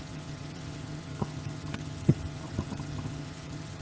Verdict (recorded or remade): remade